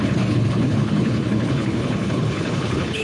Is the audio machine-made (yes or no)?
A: yes